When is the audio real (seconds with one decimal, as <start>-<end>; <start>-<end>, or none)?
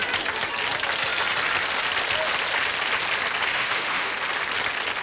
0.0-3.5; 4.1-5.0